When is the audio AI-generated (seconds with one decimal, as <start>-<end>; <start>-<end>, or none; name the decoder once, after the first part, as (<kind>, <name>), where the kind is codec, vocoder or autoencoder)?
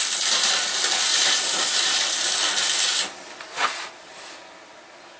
1.1-2.0 (vocoder, BigVGAN v2); 3.5-4.3